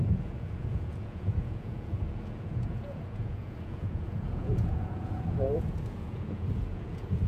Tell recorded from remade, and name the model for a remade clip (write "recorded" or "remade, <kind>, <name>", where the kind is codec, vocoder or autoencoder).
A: remade, vocoder, Vocos